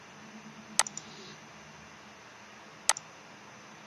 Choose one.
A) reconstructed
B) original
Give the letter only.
B